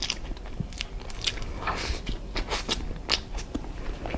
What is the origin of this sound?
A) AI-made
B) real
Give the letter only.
B